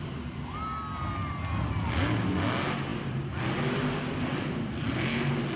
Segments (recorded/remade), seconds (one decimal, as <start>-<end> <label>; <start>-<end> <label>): 0.0-5.6 recorded